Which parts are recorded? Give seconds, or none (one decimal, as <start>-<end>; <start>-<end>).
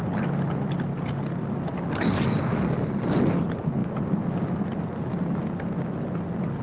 0.0-6.6